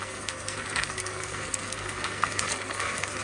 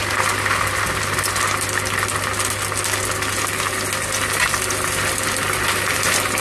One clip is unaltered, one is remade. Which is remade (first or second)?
first